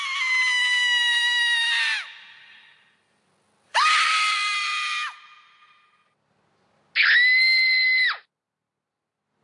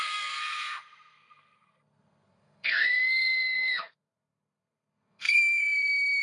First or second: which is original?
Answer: first